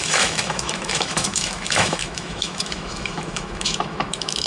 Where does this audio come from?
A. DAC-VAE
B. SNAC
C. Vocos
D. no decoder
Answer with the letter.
A